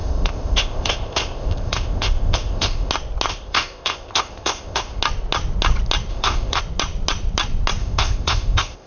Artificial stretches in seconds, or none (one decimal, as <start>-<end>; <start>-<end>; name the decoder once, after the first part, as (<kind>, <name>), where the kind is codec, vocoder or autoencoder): 0.0-2.9 (codec, ZipCodec); 3.3-5.0; 6.1-6.6; 7.8-8.9